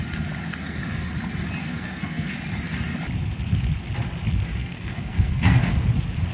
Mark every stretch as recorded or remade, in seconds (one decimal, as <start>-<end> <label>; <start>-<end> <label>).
0.0-0.5 recorded; 0.5-1.1 remade; 1.1-1.6 recorded; 1.6-2.3 remade; 2.3-4.6 recorded; 4.6-5.7 remade; 5.7-6.3 recorded